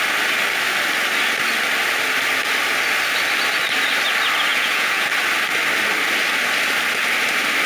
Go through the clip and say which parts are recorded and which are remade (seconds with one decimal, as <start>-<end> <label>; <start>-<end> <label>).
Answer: 0.0-4.5 recorded; 4.5-5.1 remade; 5.1-7.7 recorded